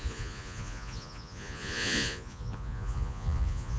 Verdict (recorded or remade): remade